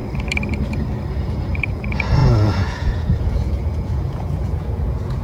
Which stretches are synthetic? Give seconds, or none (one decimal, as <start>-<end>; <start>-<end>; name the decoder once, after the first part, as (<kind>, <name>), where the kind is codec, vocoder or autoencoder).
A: 1.1-5.2 (vocoder, Vocos)